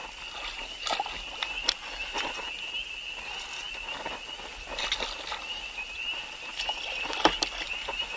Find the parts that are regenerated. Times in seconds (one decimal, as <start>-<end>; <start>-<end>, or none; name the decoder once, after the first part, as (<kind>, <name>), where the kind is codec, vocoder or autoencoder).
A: 6.5-7.4 (vocoder, BigVGAN v2)